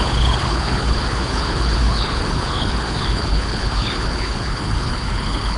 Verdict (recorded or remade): remade